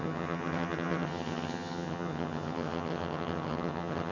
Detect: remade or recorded remade